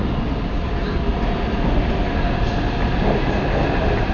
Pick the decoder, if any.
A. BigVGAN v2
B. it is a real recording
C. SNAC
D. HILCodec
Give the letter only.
B